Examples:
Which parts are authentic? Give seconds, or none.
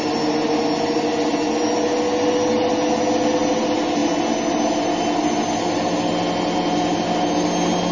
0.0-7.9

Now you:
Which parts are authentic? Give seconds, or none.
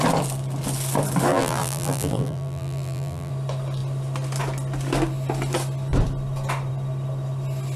0.0-1.3; 3.3-7.8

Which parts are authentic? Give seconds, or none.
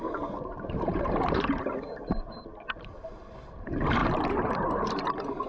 2.4-4.0; 4.8-5.5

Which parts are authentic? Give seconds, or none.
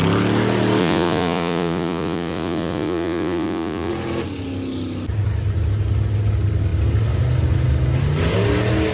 0.0-0.8; 3.9-8.9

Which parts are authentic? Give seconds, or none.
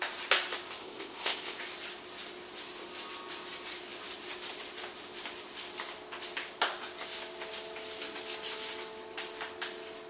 0.0-0.8; 1.6-10.1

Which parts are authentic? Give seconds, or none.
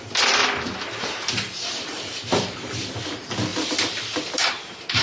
0.4-1.0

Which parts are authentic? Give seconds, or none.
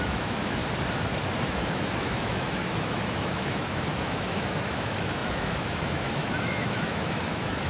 0.6-1.5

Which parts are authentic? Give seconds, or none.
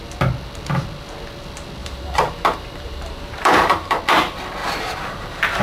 0.0-1.8; 4.0-4.6